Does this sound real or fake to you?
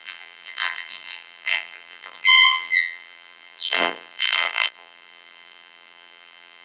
fake